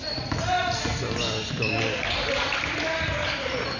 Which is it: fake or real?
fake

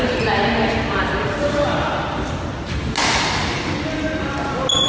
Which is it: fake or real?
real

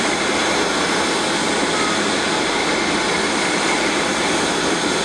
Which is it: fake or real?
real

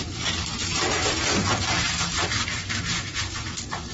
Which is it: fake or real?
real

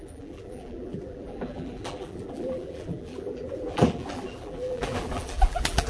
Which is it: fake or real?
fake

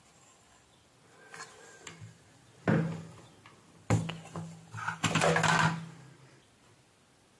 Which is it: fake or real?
real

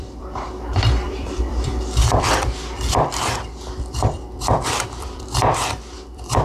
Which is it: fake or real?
fake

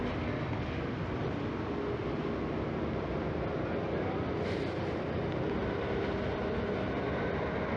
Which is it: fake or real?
real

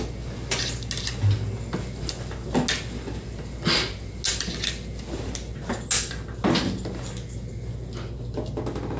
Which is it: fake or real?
real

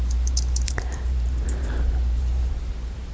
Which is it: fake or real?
fake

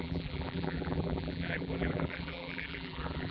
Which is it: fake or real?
fake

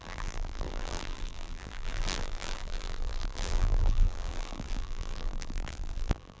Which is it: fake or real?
fake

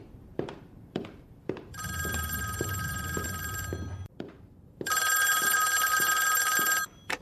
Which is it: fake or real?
fake